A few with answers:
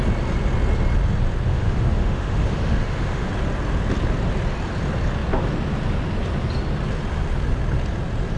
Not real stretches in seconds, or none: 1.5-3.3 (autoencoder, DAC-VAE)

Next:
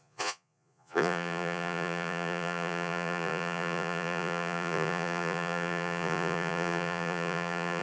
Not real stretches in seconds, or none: 0.0-7.8 (vocoder, Vocos)

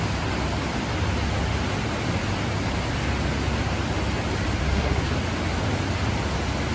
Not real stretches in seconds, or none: 4.6-5.1 (codec, SNAC)

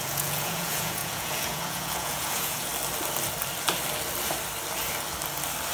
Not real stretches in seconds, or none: 0.0-2.7 (vocoder, Vocos)